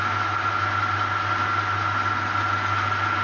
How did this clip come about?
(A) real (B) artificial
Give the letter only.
A